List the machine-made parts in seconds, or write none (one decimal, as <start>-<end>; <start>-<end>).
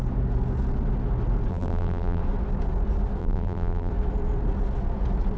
1.5-2.2; 3.2-3.9